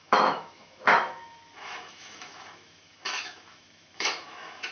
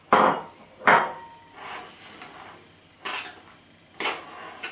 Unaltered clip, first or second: second